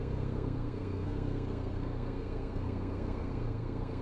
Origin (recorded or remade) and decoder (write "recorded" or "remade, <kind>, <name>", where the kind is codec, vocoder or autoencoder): remade, codec, SNAC